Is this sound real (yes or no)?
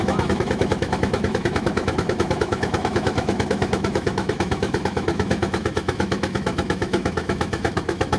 no